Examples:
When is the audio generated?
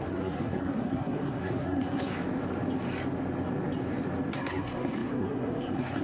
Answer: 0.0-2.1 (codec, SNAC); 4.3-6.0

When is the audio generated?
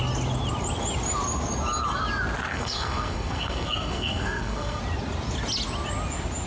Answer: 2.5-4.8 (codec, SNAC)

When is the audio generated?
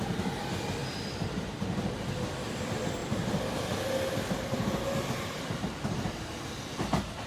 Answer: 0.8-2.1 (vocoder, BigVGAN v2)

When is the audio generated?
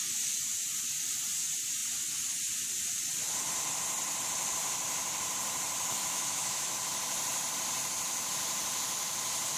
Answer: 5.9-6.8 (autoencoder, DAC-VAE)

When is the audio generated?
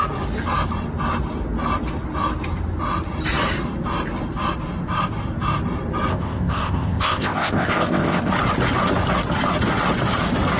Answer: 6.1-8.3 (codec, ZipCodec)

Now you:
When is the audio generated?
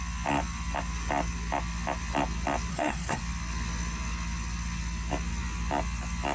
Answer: 2.7-3.2 (codec, SNAC)